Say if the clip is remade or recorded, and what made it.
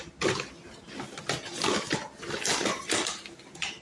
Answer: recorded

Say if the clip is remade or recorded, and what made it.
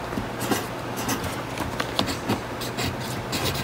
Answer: recorded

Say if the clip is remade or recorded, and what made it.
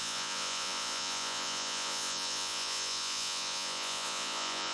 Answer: remade, vocoder, Vocos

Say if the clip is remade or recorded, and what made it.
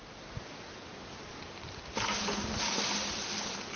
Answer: recorded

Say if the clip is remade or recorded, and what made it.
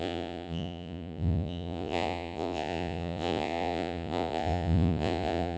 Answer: remade, vocoder, Vocos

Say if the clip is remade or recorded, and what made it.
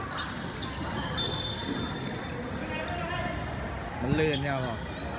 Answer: recorded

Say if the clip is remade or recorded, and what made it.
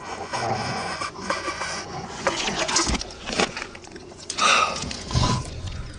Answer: remade, vocoder, Vocos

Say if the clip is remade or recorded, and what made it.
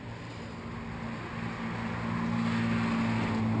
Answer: recorded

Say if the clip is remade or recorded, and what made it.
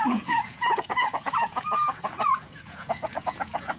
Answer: remade, vocoder, Vocos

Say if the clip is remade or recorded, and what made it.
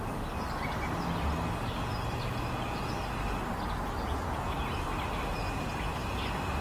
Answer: recorded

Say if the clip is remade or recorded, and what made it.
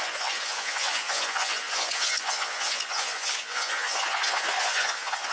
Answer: remade, vocoder, Vocos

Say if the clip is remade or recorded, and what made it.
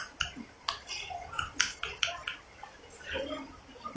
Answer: recorded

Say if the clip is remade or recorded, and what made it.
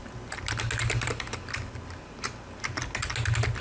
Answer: recorded